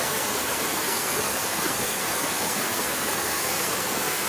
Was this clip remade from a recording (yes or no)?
yes